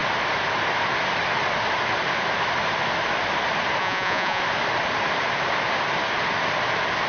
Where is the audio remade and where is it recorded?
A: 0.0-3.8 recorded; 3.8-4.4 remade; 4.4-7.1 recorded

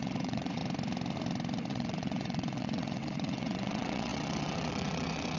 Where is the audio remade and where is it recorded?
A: 0.0-0.6 remade; 0.6-1.7 recorded; 1.7-5.4 remade

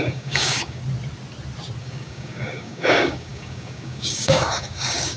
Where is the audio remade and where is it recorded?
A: 0.0-0.8 remade; 0.8-1.8 recorded; 1.8-5.2 remade

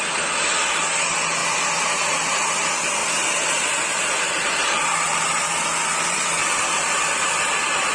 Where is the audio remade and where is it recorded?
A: 0.0-7.9 recorded

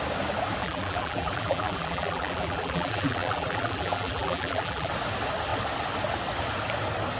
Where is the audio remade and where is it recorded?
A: 0.0-0.6 recorded; 0.6-4.9 remade; 4.9-7.2 recorded